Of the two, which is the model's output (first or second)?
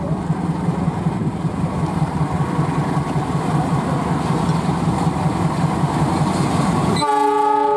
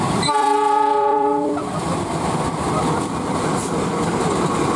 second